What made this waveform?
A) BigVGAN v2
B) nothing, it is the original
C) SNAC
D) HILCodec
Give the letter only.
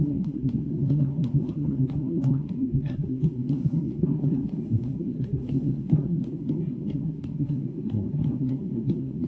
C